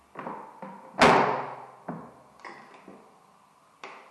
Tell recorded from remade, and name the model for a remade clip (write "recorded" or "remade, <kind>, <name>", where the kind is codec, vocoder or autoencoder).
recorded